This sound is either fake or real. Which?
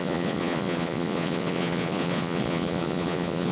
fake